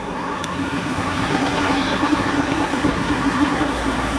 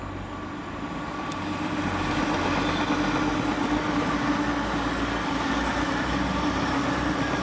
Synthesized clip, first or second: first